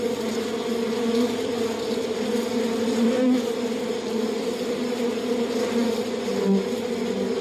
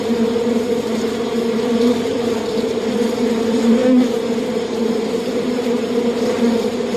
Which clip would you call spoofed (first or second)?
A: second